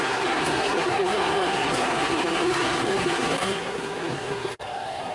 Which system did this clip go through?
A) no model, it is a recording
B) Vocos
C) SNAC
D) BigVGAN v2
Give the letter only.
C